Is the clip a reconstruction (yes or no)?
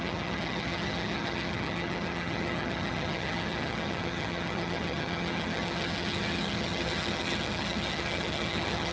yes